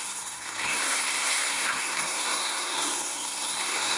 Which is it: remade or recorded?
remade